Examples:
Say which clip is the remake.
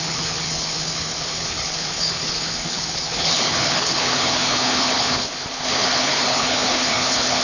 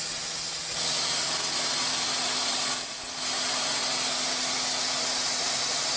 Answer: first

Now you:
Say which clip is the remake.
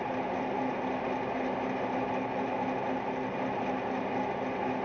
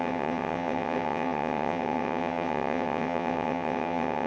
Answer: second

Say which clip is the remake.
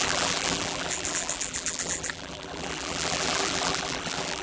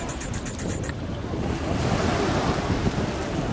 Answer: first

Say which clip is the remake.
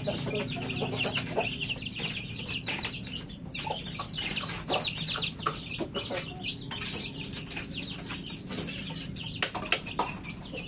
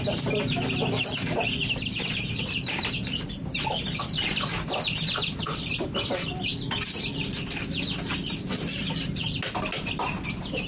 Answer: second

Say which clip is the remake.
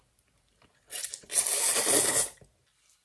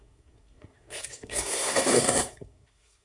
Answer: second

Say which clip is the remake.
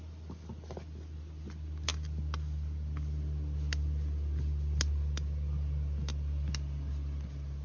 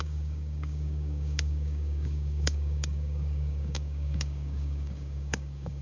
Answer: second